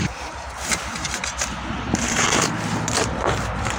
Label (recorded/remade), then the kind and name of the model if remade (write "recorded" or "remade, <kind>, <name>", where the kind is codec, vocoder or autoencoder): remade, vocoder, BigVGAN v2